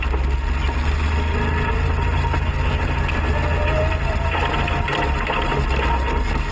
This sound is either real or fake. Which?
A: real